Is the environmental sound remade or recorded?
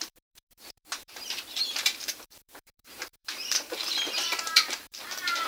remade